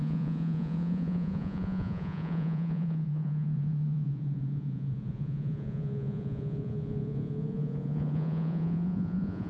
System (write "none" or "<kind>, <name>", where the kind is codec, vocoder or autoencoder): vocoder, Vocos